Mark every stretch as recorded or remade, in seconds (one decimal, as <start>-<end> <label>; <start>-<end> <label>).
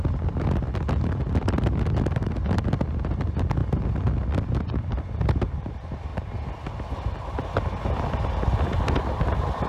0.0-9.7 recorded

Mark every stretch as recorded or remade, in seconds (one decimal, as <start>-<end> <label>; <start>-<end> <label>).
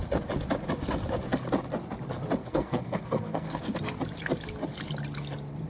0.0-2.4 recorded; 2.4-3.6 remade; 3.6-5.7 recorded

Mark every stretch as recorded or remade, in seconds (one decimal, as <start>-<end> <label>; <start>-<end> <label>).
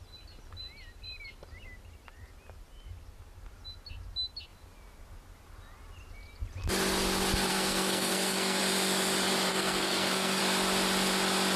0.0-7.5 recorded; 7.5-8.6 remade; 8.6-9.5 recorded; 9.5-10.4 remade; 10.4-11.6 recorded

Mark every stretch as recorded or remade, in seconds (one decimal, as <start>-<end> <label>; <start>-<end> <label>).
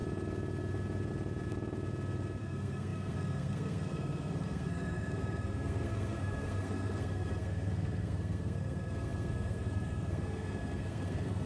0.0-2.4 recorded; 2.4-11.5 remade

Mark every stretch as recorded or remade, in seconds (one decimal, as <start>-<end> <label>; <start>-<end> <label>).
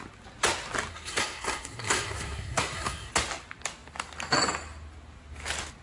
0.0-0.9 recorded; 0.9-3.1 remade; 3.1-5.8 recorded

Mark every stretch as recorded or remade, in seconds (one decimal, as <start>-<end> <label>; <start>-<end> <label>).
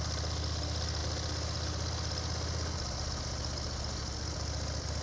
0.0-5.0 recorded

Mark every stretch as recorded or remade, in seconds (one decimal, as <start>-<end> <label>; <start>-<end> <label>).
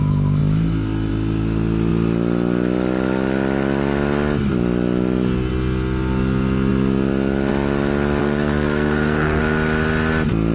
0.0-8.2 recorded; 8.2-9.4 remade; 9.4-10.5 recorded